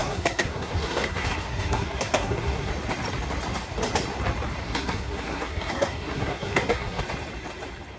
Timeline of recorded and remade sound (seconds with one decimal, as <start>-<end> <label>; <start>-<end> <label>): 0.0-2.7 remade; 2.7-4.6 recorded; 4.6-7.0 remade; 7.0-8.0 recorded